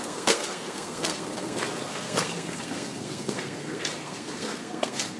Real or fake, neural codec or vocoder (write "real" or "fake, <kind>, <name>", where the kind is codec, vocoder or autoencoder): fake, codec, SNAC